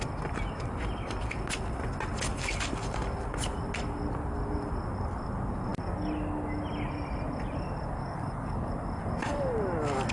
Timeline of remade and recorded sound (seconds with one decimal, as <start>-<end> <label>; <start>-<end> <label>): 0.0-8.0 recorded; 8.0-8.7 remade; 8.7-10.1 recorded